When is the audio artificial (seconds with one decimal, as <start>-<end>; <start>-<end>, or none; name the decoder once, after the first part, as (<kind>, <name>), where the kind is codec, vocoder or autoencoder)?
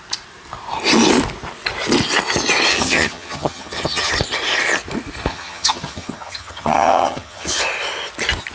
2.7-4.1 (vocoder, HiFi-GAN); 5.3-7.6